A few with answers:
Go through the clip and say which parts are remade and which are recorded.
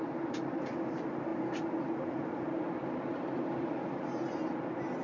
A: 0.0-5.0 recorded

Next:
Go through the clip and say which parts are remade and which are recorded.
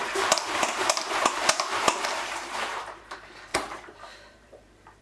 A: 0.0-3.0 remade; 3.0-3.5 recorded; 3.5-5.0 remade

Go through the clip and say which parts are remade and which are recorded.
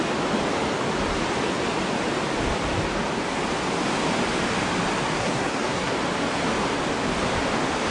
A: 0.0-5.2 recorded; 5.2-5.9 remade; 5.9-7.9 recorded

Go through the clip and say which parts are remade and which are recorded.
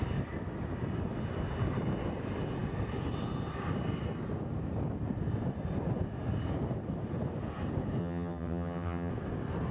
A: 0.0-8.0 recorded; 8.0-9.1 remade; 9.1-9.7 recorded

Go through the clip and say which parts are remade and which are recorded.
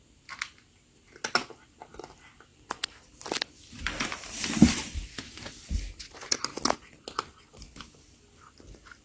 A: 0.0-2.5 recorded; 2.5-5.2 remade; 5.2-9.0 recorded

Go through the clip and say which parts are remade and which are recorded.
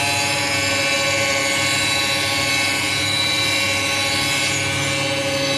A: 0.0-5.6 recorded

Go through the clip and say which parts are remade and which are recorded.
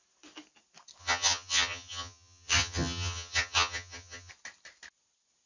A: 0.0-1.0 recorded; 1.0-4.3 remade; 4.3-5.5 recorded